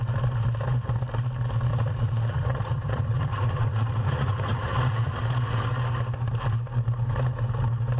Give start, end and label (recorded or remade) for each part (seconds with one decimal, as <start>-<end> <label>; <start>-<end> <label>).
0.0-1.7 recorded; 1.7-5.2 remade; 5.2-8.0 recorded